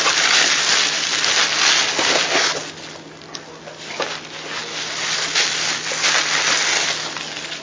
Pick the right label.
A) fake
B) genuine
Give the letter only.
B